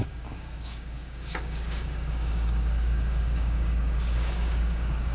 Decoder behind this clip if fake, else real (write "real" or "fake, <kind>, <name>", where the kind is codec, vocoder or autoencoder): fake, codec, DAC